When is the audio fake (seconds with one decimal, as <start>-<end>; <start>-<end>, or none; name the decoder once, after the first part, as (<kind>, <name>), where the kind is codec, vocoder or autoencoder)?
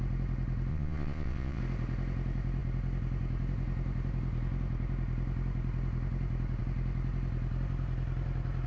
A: 0.7-1.6 (vocoder, Vocos)